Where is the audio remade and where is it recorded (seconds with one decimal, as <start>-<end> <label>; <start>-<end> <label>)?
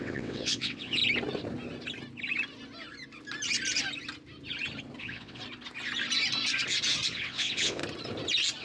0.0-1.0 remade; 1.0-5.0 recorded; 5.0-5.4 remade; 5.4-7.1 recorded; 7.1-7.8 remade; 7.8-8.6 recorded